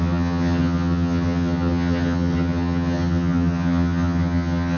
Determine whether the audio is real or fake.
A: fake